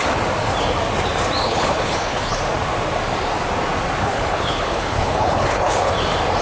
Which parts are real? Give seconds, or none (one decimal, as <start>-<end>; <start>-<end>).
0.0-1.4; 2.4-4.0; 5.9-6.4